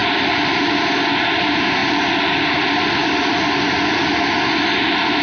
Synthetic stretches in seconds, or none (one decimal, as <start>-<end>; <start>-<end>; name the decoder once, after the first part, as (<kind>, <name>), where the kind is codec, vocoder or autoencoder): 0.0-0.9 (vocoder, BigVGAN v2); 1.8-2.4